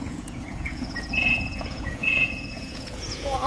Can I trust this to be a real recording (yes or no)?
no